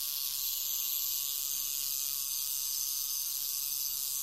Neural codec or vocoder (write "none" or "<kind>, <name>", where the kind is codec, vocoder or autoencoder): codec, DAC